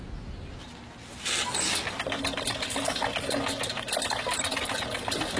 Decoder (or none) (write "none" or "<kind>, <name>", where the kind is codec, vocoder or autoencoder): none